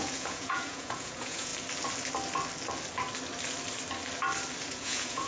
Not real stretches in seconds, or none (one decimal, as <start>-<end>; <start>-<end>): 0.0-1.5; 4.7-5.3